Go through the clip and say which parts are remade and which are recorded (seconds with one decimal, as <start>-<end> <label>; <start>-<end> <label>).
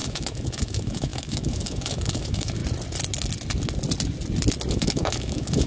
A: 0.0-2.6 remade; 2.6-4.7 recorded; 4.7-5.7 remade